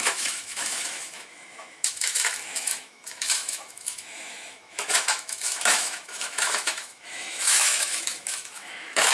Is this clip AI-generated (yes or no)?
yes